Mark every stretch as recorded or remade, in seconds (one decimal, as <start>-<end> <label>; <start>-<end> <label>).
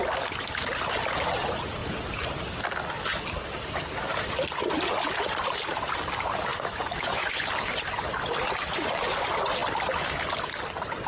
0.0-6.5 recorded; 6.5-7.5 remade; 7.5-11.1 recorded